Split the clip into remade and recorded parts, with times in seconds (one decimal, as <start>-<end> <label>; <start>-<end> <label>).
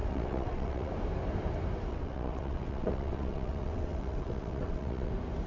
0.0-0.9 remade; 0.9-1.9 recorded; 1.9-5.1 remade; 5.1-5.5 recorded